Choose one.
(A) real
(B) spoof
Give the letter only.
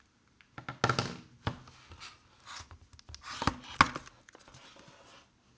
A